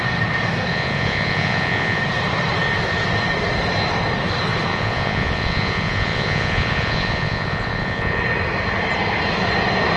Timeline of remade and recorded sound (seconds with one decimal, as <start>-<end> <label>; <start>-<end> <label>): 0.0-0.7 recorded; 0.7-2.0 remade; 2.0-4.7 recorded; 4.7-8.2 remade; 8.2-10.0 recorded